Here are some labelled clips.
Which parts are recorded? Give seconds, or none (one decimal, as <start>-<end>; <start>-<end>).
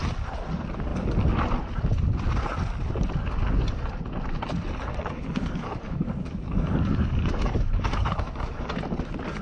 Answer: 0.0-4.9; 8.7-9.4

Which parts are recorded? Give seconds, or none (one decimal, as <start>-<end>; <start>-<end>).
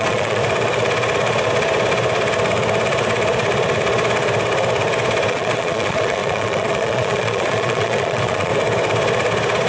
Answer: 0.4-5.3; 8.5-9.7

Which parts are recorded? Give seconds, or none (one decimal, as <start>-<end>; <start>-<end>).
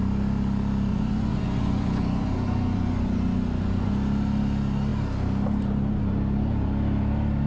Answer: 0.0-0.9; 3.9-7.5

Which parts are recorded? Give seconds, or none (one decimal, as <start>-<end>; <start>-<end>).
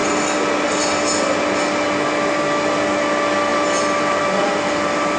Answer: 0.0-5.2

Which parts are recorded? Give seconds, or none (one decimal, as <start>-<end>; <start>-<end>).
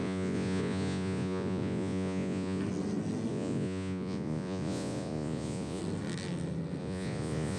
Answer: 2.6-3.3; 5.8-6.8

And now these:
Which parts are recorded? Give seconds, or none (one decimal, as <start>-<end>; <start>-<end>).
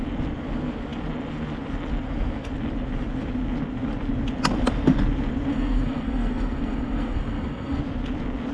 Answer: 0.0-5.5; 7.8-8.5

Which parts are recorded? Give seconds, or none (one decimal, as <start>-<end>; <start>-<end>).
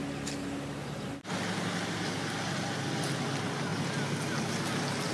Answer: 0.0-5.1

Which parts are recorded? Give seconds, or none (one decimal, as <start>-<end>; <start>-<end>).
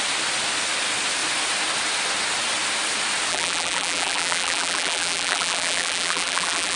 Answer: 0.0-3.3